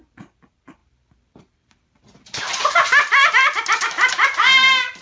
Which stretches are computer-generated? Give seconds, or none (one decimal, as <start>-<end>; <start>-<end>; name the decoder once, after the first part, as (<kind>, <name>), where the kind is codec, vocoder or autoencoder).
0.8-3.8 (vocoder, BigVGAN v2)